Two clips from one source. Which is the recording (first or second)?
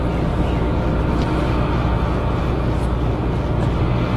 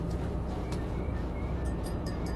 first